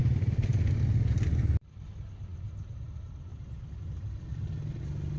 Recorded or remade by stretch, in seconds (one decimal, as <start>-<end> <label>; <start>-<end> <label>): 0.0-5.2 recorded